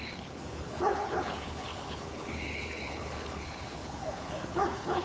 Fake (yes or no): yes